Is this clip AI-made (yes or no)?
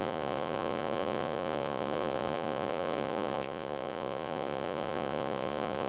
yes